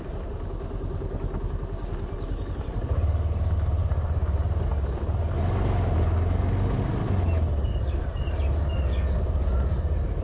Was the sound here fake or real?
real